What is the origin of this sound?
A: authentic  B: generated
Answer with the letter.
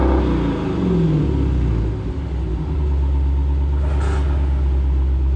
A